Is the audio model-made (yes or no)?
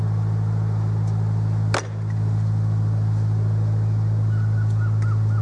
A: no